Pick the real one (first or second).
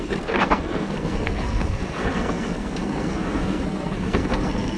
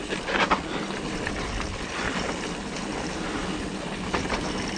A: second